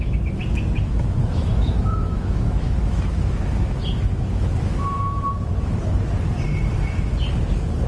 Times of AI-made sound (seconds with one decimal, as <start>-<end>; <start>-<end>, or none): 0.8-5.5